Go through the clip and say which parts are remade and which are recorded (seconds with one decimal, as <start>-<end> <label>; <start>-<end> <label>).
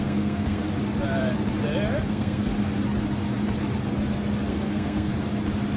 0.0-0.6 remade; 0.6-2.1 recorded; 2.1-2.5 remade; 2.5-4.5 recorded; 4.5-5.1 remade; 5.1-5.8 recorded